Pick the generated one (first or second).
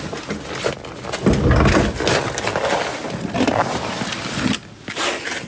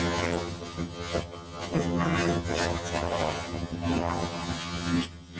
second